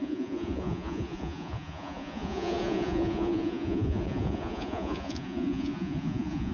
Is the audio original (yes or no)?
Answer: no